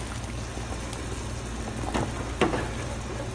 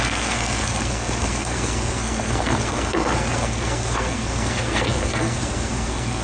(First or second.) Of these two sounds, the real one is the first